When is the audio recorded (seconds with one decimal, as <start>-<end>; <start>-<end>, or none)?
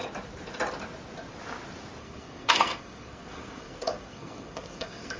0.0-2.0